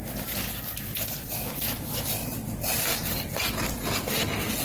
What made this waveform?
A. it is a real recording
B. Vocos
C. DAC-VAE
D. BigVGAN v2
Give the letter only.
A